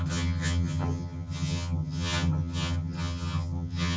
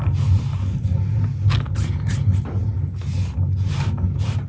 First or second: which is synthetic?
first